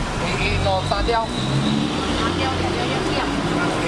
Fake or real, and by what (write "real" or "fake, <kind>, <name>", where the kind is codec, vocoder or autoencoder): real